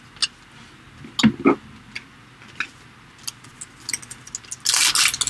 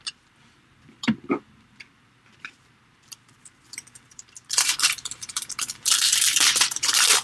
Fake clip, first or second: second